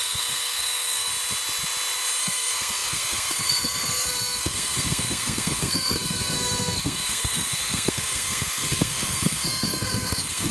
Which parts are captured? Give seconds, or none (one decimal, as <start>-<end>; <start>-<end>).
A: 1.1-2.2